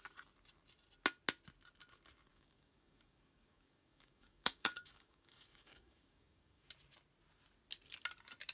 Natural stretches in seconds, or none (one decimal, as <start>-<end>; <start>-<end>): 0.0-2.3; 6.7-8.5